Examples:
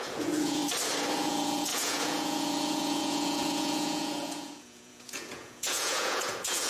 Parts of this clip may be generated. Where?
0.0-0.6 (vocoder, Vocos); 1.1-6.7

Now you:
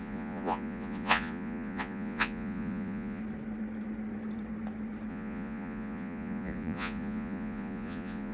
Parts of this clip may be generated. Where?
0.0-3.2 (vocoder, Vocos); 5.1-8.3

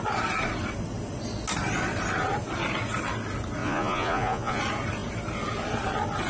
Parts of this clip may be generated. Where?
3.6-4.6 (vocoder, Vocos)

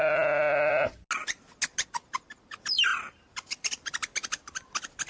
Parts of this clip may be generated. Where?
none

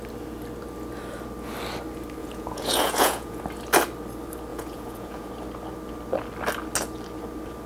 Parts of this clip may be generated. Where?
2.2-3.4 (vocoder, Vocos); 4.5-5.3

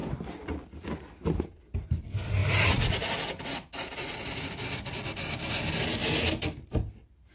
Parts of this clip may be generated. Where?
2.4-4.6 (vocoder, Vocos)

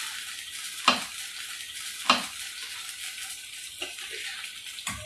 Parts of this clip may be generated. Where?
none